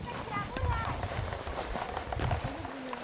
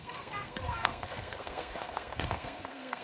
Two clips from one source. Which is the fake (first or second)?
second